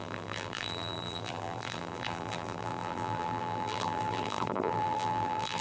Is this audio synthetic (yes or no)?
yes